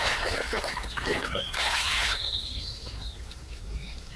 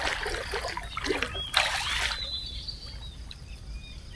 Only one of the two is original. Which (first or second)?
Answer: second